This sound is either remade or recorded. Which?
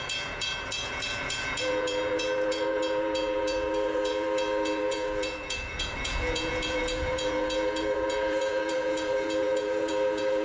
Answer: remade